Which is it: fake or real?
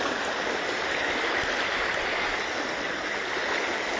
real